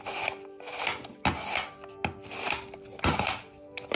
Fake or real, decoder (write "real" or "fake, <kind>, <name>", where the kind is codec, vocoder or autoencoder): real